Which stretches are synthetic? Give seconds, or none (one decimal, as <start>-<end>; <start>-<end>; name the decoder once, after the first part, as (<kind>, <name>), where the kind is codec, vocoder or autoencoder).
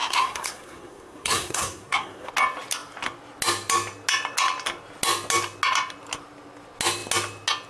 0.0-2.3 (codec, SNAC)